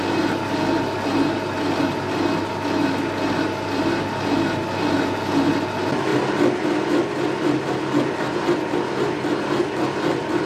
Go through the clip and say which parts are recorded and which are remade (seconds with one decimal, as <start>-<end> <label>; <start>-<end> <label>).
0.0-10.5 recorded